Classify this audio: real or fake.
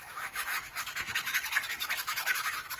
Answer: fake